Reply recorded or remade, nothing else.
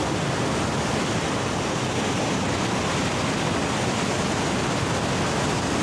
recorded